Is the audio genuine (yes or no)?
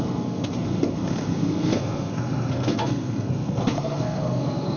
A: no